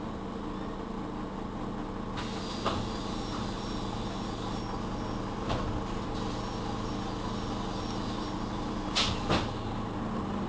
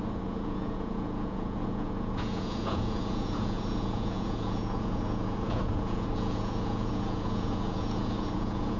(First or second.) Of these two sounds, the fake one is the second